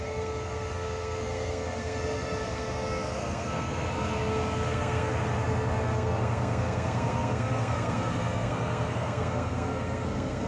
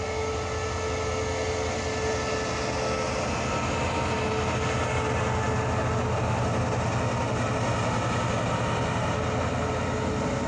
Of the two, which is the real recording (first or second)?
second